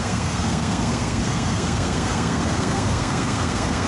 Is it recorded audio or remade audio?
remade